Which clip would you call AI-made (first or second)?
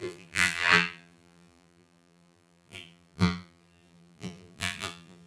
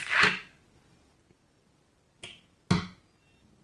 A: first